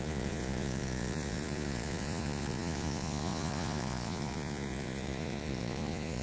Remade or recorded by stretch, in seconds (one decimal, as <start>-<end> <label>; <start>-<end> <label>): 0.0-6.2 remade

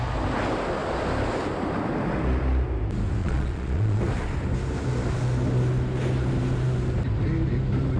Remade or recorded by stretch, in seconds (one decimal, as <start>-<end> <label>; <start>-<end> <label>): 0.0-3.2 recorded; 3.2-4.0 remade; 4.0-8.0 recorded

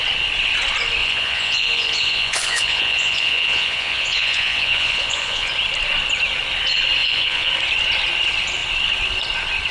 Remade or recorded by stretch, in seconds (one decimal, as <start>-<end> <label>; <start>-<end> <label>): 0.0-1.0 recorded; 1.0-5.5 remade; 5.5-7.0 recorded; 7.0-7.5 remade; 7.5-9.7 recorded

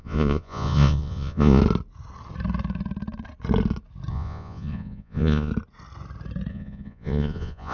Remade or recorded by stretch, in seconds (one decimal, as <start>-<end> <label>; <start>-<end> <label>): 0.0-1.6 remade; 1.6-4.1 recorded; 4.1-5.5 remade; 5.5-6.5 recorded; 6.5-7.7 remade

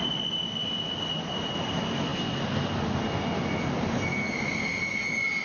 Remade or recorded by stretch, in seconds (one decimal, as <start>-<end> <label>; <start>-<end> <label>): 0.0-5.4 recorded

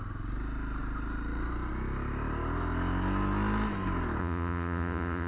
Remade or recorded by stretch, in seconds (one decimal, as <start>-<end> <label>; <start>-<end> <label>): 0.0-4.2 recorded; 4.2-5.3 remade